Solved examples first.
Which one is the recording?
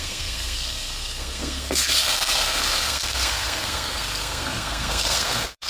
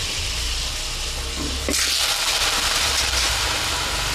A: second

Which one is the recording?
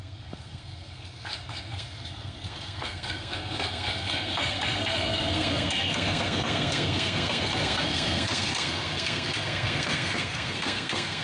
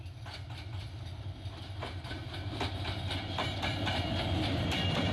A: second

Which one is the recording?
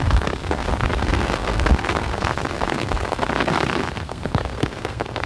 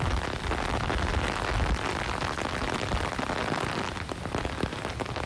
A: second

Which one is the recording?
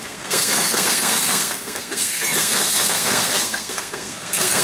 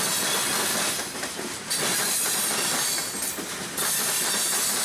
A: second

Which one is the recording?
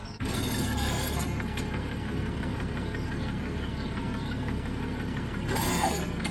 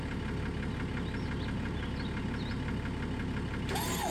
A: second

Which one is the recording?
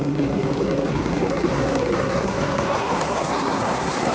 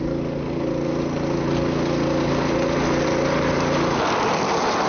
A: second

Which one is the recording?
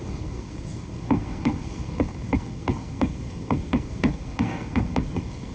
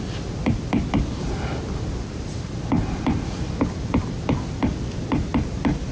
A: second